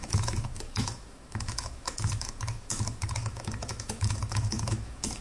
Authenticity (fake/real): fake